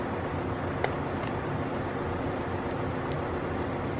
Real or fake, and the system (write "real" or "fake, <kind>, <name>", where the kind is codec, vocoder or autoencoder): real